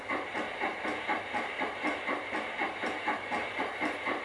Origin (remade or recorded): remade